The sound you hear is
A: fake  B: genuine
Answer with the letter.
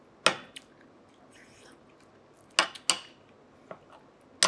B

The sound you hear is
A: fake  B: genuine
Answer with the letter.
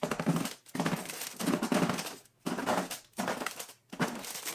B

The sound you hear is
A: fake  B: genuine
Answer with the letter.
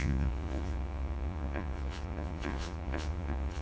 A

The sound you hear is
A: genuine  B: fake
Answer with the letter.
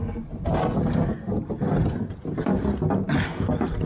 A